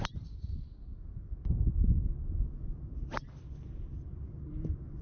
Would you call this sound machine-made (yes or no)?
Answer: no